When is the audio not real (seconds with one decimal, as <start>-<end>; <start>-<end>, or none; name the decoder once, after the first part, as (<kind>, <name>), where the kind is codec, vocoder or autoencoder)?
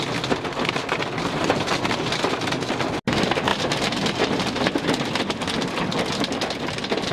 3.5-5.2 (vocoder, BigVGAN v2)